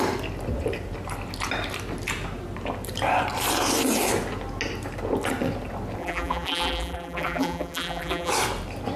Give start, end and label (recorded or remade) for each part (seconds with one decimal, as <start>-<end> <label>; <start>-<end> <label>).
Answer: 0.0-6.0 recorded; 6.0-8.3 remade; 8.3-9.0 recorded